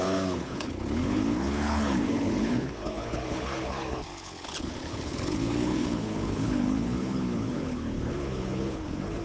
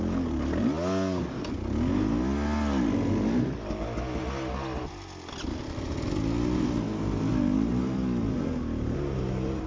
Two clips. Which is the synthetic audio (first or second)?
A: first